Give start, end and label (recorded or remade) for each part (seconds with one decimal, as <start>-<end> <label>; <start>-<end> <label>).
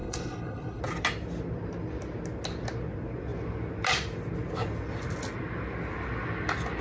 0.0-0.8 remade; 0.8-6.8 recorded